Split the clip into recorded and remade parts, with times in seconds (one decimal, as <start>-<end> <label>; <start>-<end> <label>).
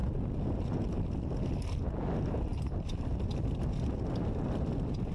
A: 0.0-5.1 recorded